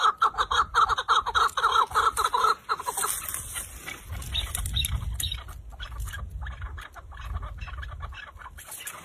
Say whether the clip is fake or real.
real